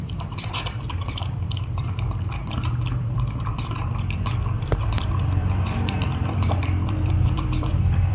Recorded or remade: remade